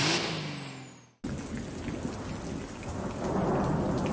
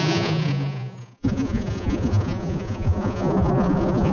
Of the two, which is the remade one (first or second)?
second